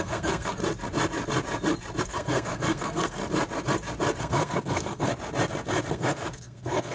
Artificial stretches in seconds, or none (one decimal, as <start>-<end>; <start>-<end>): 0.0-0.6; 2.0-3.2; 4.2-5.1; 5.9-6.9